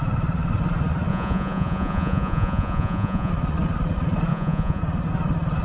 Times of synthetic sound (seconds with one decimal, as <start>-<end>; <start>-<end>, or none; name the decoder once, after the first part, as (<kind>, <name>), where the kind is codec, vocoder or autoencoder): 1.1-3.3 (vocoder, Vocos); 4.3-4.8